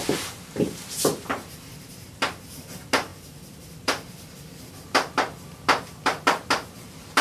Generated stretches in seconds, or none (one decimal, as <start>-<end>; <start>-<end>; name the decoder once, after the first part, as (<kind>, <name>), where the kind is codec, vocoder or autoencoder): 0.0-7.2 (vocoder, BigVGAN v2)